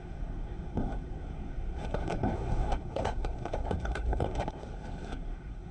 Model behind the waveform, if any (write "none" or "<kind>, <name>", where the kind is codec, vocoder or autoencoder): codec, SNAC